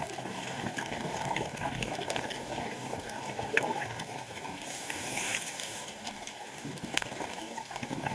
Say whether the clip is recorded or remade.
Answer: remade